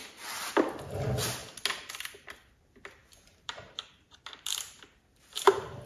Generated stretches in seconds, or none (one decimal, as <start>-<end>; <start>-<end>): 3.0-4.6